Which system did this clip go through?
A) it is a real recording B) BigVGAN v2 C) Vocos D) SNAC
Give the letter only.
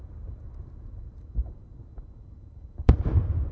B